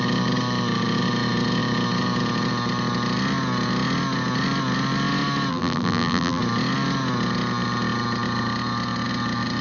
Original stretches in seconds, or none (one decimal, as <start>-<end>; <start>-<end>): 0.0-5.5; 6.4-9.6